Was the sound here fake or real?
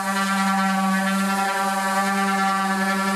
real